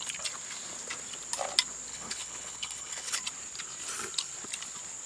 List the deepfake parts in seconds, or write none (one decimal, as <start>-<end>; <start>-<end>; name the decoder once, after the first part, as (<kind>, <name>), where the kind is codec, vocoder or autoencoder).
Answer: 1.9-3.2 (codec, HILCodec)